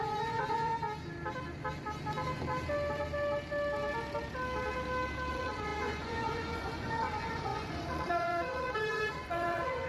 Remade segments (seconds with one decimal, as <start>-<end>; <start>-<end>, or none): 0.0-0.7; 5.3-9.9